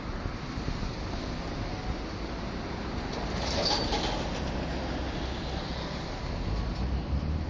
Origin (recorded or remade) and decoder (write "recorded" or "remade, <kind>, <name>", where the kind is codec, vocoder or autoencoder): recorded